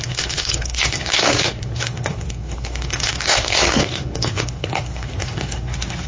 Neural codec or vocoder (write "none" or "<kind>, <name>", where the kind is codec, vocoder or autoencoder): codec, SNAC